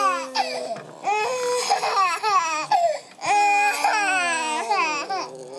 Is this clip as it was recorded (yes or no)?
yes